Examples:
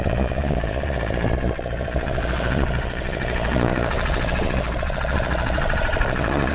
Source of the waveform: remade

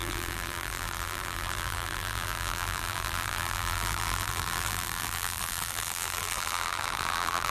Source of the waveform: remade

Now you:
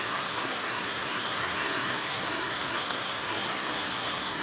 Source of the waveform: remade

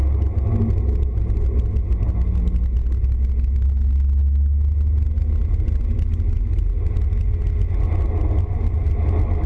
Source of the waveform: recorded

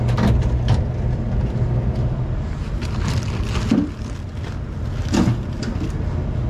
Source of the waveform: recorded